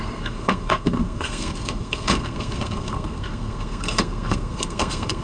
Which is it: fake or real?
fake